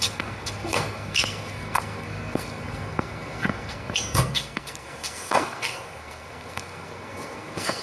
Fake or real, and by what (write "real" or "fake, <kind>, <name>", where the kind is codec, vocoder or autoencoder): fake, codec, SNAC